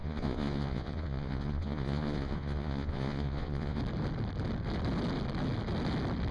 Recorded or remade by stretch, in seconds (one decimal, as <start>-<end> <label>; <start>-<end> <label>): 0.0-3.8 remade; 3.8-6.3 recorded